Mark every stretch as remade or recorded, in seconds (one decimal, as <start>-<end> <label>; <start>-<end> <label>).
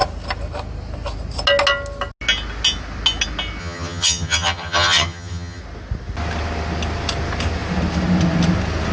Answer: 0.0-3.6 recorded; 3.6-5.6 remade; 5.6-8.9 recorded